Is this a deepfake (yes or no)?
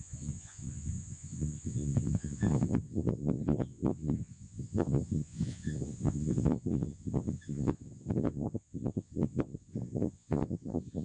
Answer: yes